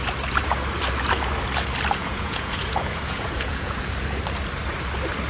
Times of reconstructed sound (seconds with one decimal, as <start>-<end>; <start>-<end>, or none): 2.0-3.9